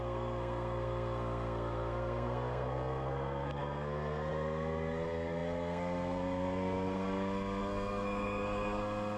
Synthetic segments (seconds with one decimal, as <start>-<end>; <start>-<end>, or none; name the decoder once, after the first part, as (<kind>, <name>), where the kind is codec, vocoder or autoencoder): 0.0-9.2 (codec, SNAC)